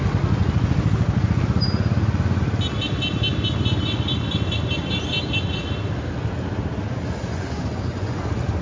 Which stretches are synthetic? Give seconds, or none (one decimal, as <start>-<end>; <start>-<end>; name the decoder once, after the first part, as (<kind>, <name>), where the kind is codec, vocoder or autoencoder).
7.3-8.2 (vocoder, Vocos)